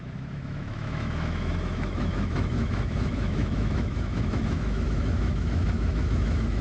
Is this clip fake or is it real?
fake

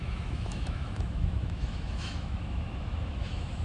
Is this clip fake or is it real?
fake